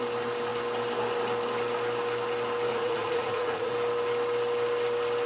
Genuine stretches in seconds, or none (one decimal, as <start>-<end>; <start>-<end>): 0.0-2.7; 3.7-5.3

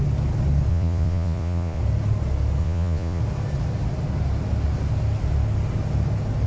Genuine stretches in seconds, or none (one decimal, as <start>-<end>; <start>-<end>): 0.0-0.7; 1.8-2.6; 3.2-6.5

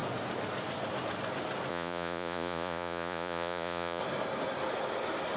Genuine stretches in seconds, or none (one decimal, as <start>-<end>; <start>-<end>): 0.0-1.7; 4.0-5.4

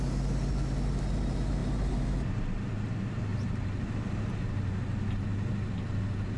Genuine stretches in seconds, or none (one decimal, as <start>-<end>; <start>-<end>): 0.0-6.4

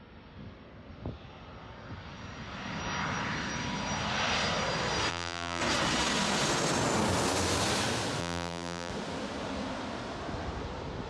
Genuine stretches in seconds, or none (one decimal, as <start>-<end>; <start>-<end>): 0.0-5.1; 5.6-8.2; 8.9-11.1

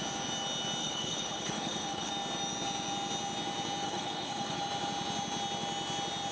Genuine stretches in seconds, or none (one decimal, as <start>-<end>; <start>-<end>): 0.0-0.8; 2.1-3.8; 4.6-6.3

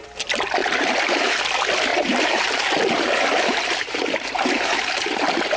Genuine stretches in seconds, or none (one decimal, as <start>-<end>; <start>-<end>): 0.0-0.6; 1.4-1.9